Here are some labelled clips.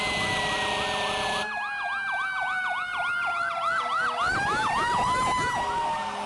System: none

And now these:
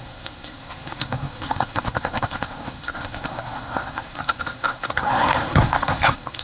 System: codec, SNAC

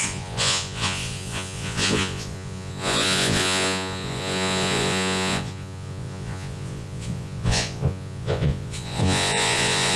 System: vocoder, Vocos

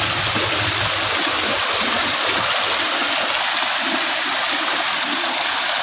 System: vocoder, BigVGAN v2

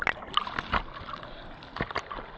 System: none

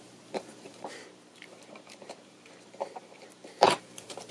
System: vocoder, BigVGAN v2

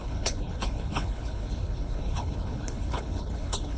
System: codec, HILCodec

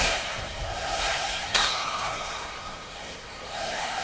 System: codec, SNAC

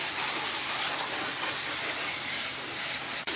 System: none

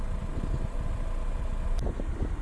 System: none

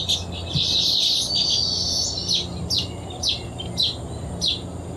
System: none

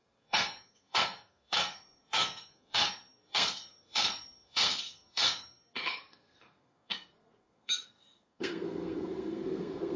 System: codec, SNAC